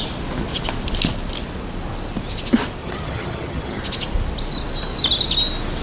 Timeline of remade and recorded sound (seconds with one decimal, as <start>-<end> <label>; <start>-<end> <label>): 0.0-2.8 recorded; 2.8-3.8 remade; 3.8-5.8 recorded